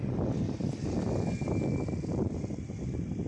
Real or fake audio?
real